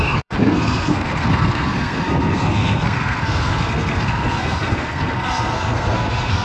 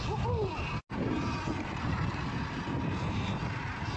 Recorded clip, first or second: second